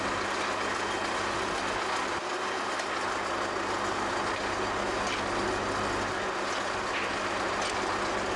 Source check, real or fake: real